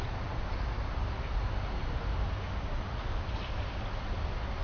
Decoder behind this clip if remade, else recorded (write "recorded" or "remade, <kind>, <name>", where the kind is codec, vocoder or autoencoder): recorded